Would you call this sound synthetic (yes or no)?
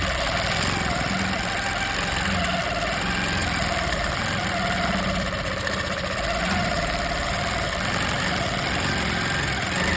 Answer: no